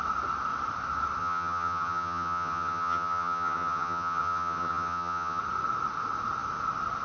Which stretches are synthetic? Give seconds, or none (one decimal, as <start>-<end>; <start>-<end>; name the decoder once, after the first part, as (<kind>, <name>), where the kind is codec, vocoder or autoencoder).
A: 1.2-5.4 (vocoder, HiFi-GAN)